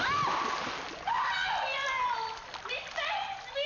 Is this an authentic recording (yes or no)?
yes